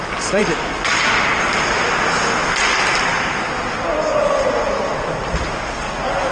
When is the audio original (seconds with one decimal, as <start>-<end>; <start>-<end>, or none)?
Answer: 0.0-6.3